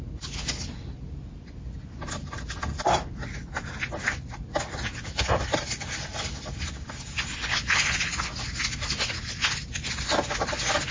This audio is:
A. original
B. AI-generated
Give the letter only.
A